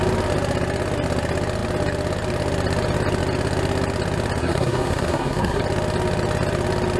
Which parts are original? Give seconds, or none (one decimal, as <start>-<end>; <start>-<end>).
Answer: 0.0-4.4; 5.6-7.0